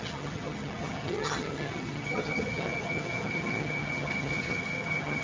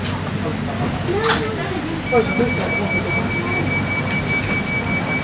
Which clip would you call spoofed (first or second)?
first